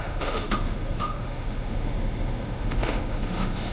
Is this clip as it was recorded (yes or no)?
no